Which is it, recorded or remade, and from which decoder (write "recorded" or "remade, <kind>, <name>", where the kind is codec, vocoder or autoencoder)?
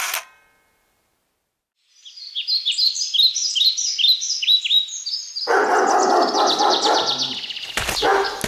recorded